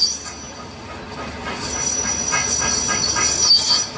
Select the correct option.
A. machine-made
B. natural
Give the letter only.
B